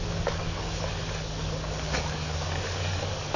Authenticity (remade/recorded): remade